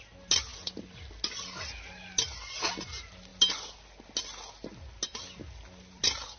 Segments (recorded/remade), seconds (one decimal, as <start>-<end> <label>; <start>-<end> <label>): 0.0-6.4 recorded